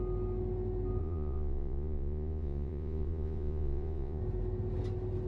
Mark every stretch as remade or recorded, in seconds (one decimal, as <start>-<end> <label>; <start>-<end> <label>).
0.0-1.0 recorded; 1.0-4.2 remade; 4.2-5.3 recorded